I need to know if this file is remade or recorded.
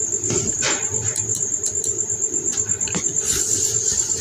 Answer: recorded